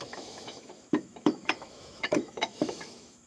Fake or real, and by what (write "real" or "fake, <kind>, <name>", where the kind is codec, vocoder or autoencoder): fake, autoencoder, DAC-VAE